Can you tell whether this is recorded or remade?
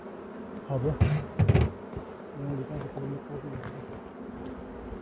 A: recorded